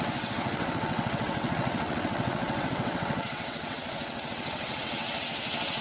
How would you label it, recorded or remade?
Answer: remade